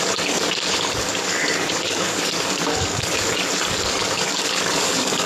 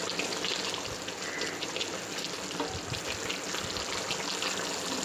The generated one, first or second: first